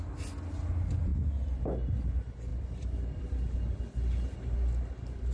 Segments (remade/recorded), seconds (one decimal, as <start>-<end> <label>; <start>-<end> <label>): 0.0-1.1 recorded; 1.1-1.6 remade; 1.6-2.5 recorded; 2.5-3.2 remade; 3.2-5.3 recorded